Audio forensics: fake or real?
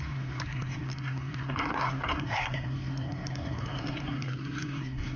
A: fake